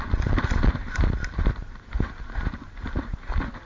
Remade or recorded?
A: recorded